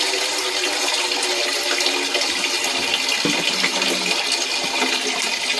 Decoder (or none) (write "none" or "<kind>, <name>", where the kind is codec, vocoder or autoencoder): none